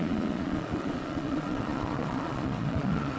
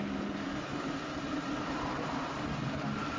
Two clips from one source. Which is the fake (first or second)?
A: first